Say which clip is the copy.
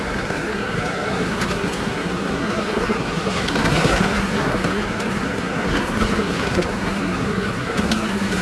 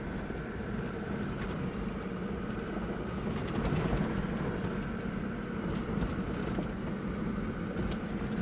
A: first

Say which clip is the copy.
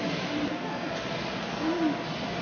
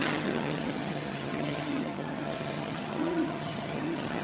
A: second